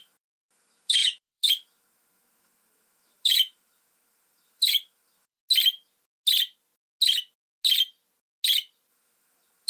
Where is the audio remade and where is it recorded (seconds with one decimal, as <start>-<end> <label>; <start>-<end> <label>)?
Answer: 0.0-5.4 remade; 5.4-8.9 recorded; 8.9-9.7 remade